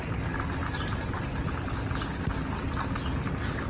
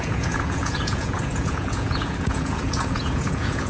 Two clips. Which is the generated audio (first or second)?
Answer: second